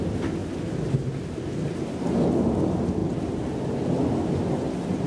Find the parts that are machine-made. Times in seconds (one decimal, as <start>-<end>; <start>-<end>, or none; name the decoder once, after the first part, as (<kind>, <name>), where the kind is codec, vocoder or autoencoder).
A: none